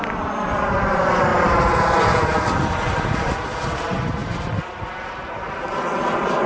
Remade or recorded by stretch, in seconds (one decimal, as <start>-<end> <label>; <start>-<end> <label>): 0.0-6.5 recorded